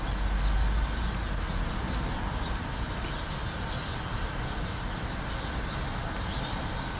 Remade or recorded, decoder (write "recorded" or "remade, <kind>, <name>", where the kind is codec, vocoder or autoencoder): recorded